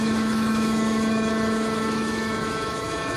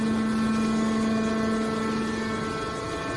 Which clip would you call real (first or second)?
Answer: second